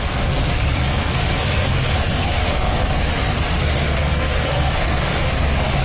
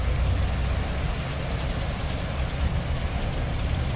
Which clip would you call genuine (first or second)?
second